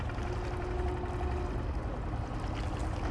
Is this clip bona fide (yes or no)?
yes